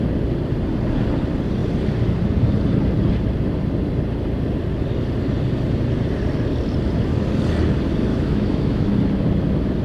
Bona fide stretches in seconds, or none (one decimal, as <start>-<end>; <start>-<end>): 0.0-8.1; 8.9-9.8